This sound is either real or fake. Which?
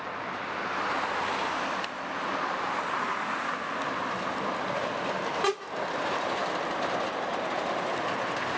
real